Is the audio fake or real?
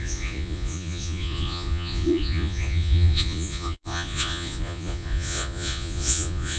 fake